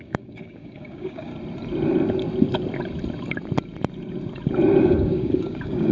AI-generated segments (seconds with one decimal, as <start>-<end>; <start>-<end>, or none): 0.0-1.3; 4.8-5.9